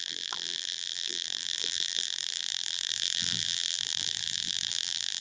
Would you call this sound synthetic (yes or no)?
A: yes